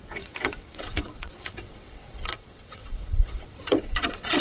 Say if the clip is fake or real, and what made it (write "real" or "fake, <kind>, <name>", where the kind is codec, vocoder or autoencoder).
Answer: fake, vocoder, WaveNeXt